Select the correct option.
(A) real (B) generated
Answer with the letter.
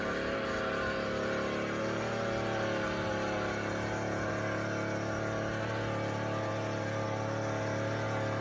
A